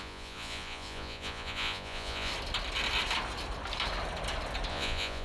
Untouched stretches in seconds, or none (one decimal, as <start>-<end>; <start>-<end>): 2.3-4.7